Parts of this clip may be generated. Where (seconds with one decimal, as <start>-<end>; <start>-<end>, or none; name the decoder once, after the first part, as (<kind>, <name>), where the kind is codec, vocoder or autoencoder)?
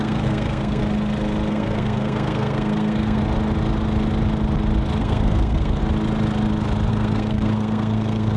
0.0-0.8 (codec, SNAC); 1.5-3.2; 5.0-5.8; 6.9-8.4